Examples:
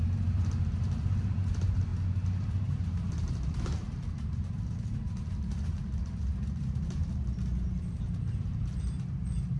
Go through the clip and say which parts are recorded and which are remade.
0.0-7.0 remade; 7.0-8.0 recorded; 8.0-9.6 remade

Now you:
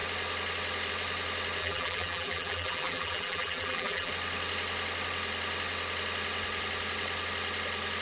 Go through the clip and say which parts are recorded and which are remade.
0.0-1.6 recorded; 1.6-4.1 remade; 4.1-8.0 recorded

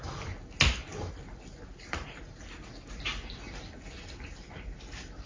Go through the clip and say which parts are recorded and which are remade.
0.0-5.3 recorded

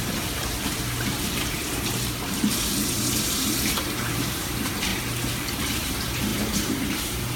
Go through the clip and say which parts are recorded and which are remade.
0.0-4.9 remade; 4.9-5.5 recorded; 5.5-7.4 remade